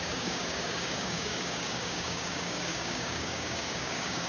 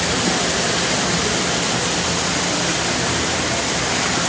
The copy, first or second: first